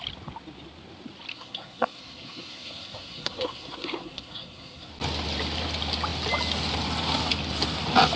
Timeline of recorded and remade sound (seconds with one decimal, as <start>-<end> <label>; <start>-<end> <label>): 0.0-1.3 recorded; 1.3-4.9 remade; 4.9-8.2 recorded